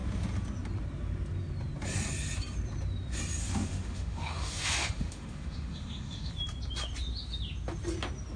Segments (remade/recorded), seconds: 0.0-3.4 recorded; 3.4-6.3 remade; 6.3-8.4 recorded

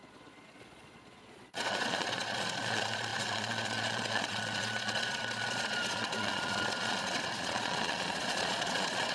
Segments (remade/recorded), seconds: 0.0-9.1 remade

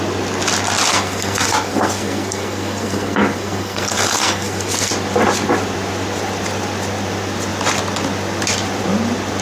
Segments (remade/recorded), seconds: 0.0-0.9 recorded; 0.9-4.9 remade; 4.9-9.4 recorded

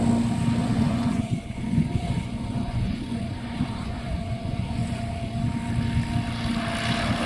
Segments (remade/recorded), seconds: 0.0-0.6 recorded; 0.6-5.0 remade; 5.0-7.3 recorded